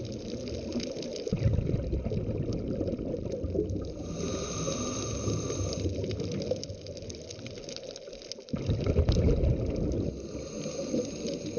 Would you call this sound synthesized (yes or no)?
no